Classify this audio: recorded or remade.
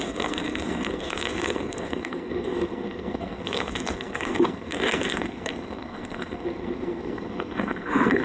remade